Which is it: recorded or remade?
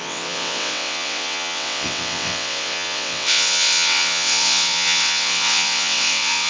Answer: remade